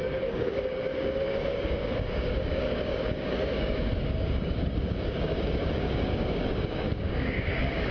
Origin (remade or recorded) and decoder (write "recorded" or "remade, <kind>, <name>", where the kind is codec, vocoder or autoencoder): remade, codec, DAC